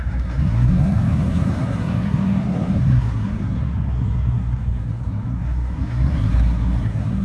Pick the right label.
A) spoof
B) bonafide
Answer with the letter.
A